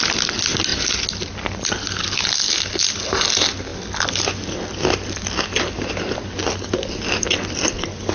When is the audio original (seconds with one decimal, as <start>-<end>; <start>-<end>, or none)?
0.0-8.1